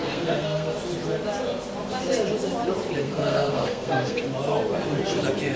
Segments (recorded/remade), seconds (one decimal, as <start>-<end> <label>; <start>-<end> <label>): 0.0-0.7 remade; 0.7-3.0 recorded; 3.0-4.2 remade; 4.2-5.6 recorded